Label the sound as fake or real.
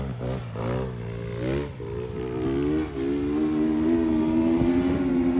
real